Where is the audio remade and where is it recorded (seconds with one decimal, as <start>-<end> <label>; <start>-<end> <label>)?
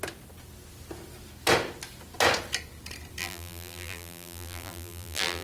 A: 0.0-3.2 recorded; 3.2-5.4 remade